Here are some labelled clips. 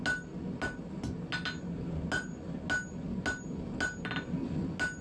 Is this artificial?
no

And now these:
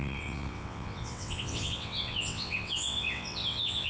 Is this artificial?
yes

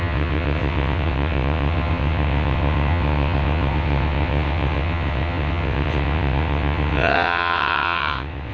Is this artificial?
yes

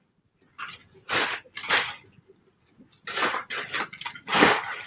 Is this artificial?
no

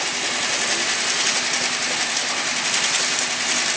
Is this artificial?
no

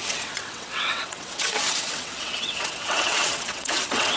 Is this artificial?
yes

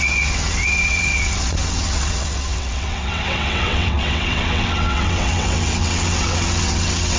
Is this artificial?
yes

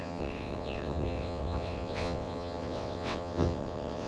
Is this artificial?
yes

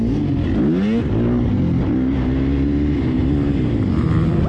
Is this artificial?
no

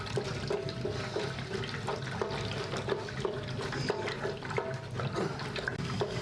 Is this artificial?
no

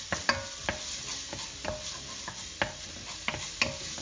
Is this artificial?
no